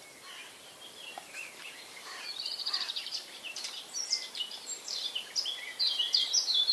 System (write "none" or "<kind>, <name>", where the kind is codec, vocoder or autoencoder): vocoder, BigVGAN v2